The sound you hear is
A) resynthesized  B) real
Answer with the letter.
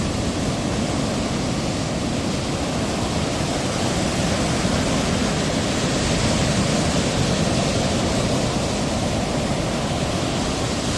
B